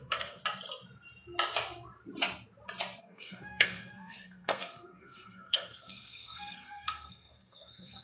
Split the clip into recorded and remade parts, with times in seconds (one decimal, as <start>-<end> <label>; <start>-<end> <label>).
0.0-0.4 remade; 0.4-3.0 recorded; 3.0-8.0 remade

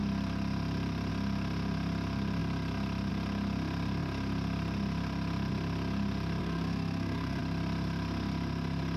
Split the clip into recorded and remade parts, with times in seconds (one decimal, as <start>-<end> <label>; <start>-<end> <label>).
0.0-6.4 recorded; 6.4-7.4 remade; 7.4-9.0 recorded